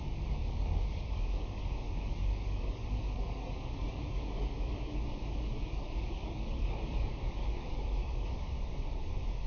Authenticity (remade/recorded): remade